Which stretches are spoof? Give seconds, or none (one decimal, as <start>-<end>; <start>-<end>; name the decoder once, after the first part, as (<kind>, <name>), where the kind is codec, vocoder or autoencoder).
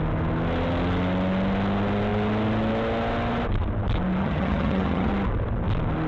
4.2-5.1 (vocoder, HiFi-GAN)